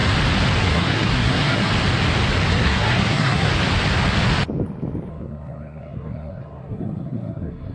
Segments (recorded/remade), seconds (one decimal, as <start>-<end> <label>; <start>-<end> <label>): 0.0-0.6 recorded; 0.6-1.7 remade; 1.7-2.5 recorded; 2.5-3.5 remade; 3.5-5.1 recorded; 5.1-7.7 remade

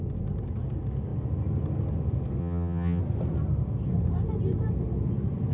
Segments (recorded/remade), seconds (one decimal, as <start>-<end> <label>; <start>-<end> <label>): 0.0-2.4 recorded; 2.4-3.0 remade; 3.0-5.5 recorded

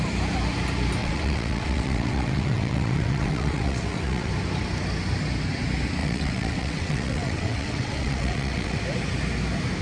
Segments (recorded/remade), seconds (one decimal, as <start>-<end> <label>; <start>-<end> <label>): 0.0-1.0 recorded; 1.0-4.3 remade; 4.3-6.0 recorded; 6.0-8.8 remade; 8.8-9.8 recorded

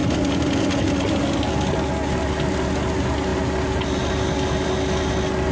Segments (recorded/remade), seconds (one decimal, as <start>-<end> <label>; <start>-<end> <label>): 0.0-5.5 recorded

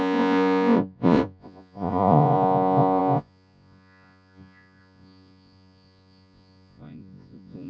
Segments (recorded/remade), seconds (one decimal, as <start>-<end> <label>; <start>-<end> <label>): 0.0-7.7 remade

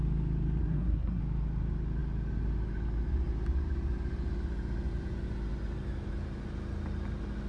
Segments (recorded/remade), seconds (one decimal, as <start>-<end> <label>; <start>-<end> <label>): 0.0-0.6 recorded; 0.6-1.2 remade; 1.2-7.5 recorded

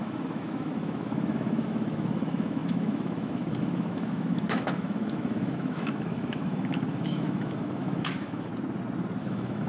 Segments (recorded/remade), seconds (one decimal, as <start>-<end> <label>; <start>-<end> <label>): 0.0-8.5 remade; 8.5-9.2 recorded; 9.2-9.7 remade

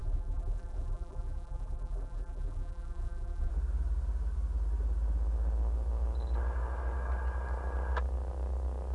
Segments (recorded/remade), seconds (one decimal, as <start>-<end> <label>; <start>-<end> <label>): 0.0-3.5 remade; 3.5-8.9 recorded